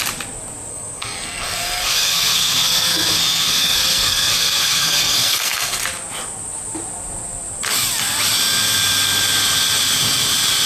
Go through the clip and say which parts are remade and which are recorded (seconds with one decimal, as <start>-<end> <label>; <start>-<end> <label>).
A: 0.0-0.7 recorded; 0.7-5.8 remade; 5.8-10.7 recorded